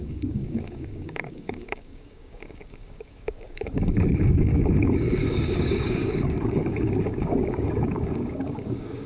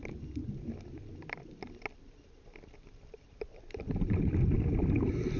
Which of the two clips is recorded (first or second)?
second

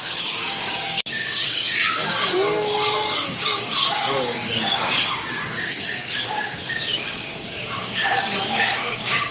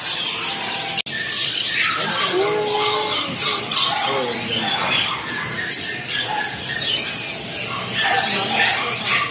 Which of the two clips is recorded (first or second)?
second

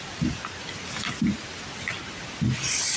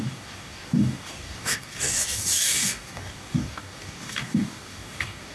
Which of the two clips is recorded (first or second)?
first